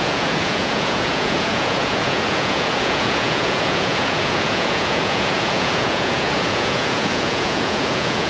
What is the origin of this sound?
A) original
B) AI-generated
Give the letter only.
B